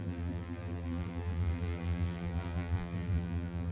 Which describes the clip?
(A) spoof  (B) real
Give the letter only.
A